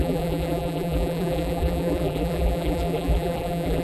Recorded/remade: remade